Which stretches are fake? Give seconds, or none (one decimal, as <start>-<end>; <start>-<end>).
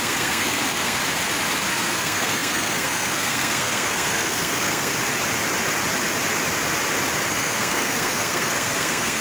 0.0-1.0; 1.7-4.9; 7.3-9.2